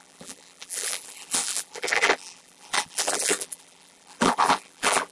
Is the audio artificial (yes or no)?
yes